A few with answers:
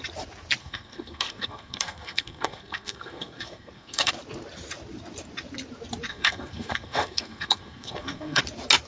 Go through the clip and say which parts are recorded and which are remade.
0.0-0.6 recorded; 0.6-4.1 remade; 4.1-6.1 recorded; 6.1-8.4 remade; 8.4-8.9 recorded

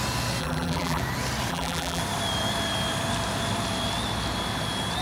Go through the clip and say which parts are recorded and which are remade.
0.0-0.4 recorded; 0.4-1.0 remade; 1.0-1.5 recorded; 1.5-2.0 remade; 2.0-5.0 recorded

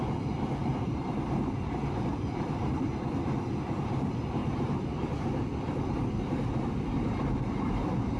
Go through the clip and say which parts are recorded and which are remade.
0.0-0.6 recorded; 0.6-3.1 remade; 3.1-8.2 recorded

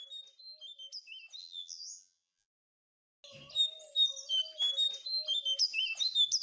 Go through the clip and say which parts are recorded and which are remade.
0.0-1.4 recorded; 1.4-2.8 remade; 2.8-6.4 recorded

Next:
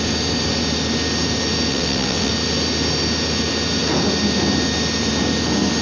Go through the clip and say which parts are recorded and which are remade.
0.0-1.7 recorded; 1.7-2.3 remade; 2.3-5.8 recorded

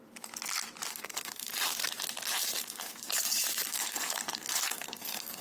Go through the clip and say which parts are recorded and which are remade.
0.0-0.9 recorded; 0.9-1.5 remade; 1.5-2.6 recorded; 2.6-3.1 remade; 3.1-3.7 recorded; 3.7-5.4 remade

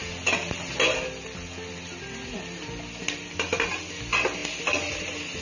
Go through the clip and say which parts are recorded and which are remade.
0.0-5.4 recorded